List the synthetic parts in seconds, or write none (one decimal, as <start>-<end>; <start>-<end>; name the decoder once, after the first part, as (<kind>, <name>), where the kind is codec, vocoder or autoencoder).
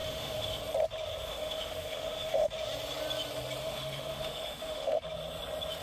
0.0-0.6 (autoencoder, DAC-VAE); 1.3-2.5; 3.6-5.0